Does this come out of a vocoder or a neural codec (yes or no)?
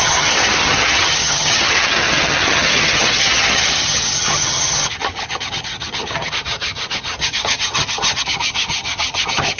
yes